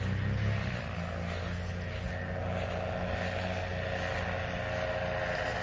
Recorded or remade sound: recorded